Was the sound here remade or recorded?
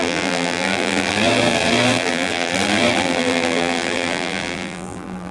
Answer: remade